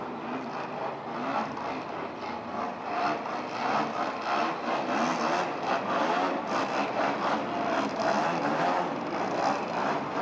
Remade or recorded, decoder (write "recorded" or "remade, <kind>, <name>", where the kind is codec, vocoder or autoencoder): recorded